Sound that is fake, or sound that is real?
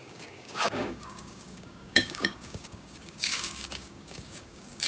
fake